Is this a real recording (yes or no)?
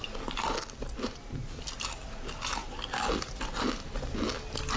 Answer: yes